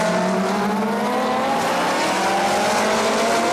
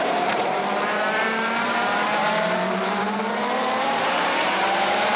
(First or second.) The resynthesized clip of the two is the second